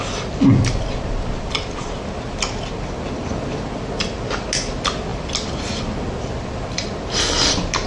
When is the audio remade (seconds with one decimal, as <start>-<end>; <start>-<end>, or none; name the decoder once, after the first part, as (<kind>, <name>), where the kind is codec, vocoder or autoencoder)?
5.1-5.6 (vocoder, BigVGAN v2)